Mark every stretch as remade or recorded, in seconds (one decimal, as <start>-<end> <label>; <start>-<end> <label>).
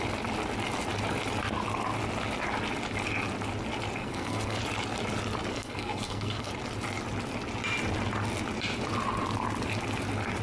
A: 0.0-4.0 recorded; 4.0-4.6 remade; 4.6-5.5 recorded; 5.5-6.5 remade; 6.5-10.4 recorded